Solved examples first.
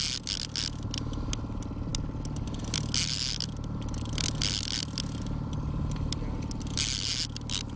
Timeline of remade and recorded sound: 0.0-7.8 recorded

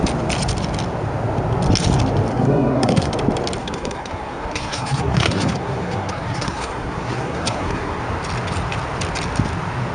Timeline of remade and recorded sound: 0.0-2.3 recorded; 2.3-3.1 remade; 3.1-3.6 recorded; 3.6-8.0 remade; 8.0-9.9 recorded

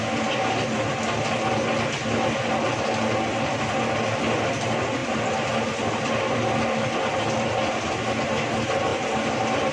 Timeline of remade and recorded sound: 0.0-9.7 recorded

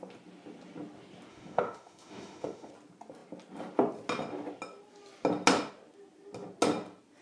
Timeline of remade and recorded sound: 0.0-1.3 recorded; 1.3-2.7 remade; 2.7-7.2 recorded

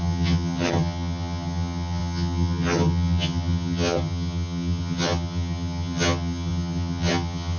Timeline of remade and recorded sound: 0.0-7.6 remade

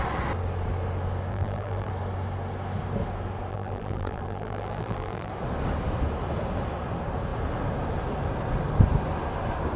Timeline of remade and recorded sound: 0.0-1.3 recorded; 1.3-1.9 remade; 1.9-3.5 recorded; 3.5-5.3 remade; 5.3-9.8 recorded